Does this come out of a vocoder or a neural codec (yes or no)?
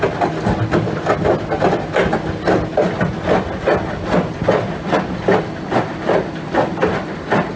no